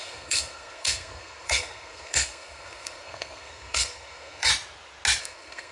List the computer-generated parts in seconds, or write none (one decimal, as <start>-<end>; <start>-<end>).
0.0-4.5; 5.2-5.7